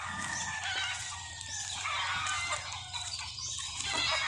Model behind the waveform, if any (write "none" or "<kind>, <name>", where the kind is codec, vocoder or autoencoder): none